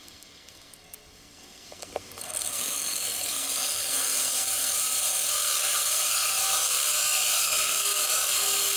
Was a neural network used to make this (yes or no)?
yes